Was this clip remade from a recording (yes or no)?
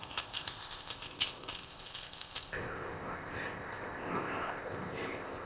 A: yes